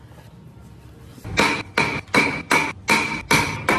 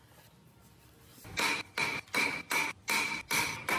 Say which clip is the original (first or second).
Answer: first